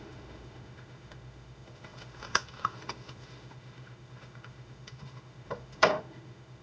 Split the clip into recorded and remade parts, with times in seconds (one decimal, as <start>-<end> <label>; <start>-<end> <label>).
0.0-6.6 remade